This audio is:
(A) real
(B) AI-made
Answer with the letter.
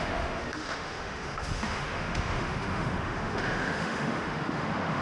B